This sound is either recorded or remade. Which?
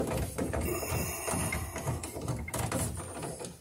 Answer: recorded